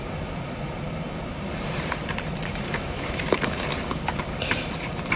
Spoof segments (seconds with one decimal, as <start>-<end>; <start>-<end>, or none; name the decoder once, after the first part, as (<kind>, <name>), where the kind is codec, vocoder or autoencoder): 0.0-5.2 (vocoder, BigVGAN v2)